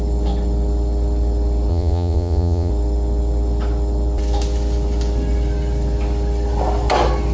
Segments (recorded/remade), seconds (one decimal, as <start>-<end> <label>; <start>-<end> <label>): 0.0-1.7 recorded; 1.7-2.7 remade; 2.7-7.3 recorded